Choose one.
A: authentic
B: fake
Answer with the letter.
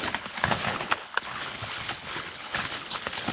B